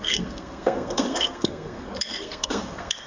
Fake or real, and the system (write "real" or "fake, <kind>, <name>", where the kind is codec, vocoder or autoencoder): fake, codec, SNAC